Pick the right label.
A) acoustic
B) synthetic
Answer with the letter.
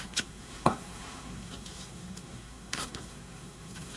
B